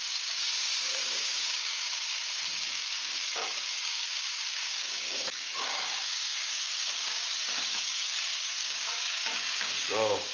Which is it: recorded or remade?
remade